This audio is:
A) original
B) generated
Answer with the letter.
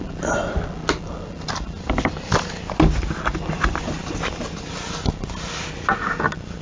A